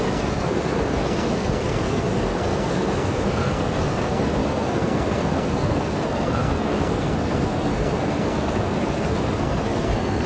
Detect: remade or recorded remade